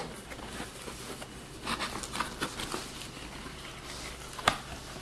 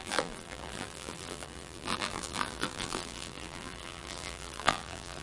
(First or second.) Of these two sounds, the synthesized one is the second